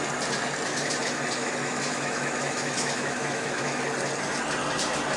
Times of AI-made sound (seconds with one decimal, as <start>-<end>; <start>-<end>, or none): 1.4-3.8